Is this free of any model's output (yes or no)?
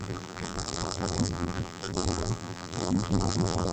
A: no